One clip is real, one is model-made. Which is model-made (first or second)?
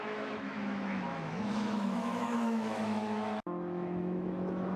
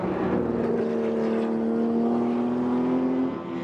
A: first